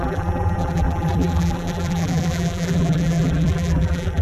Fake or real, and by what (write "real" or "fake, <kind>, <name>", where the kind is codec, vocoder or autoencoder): fake, vocoder, BigVGAN v2